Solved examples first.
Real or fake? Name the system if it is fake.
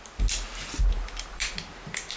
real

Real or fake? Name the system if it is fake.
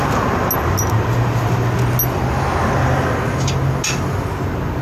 real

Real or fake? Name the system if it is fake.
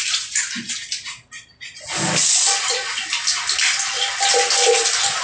real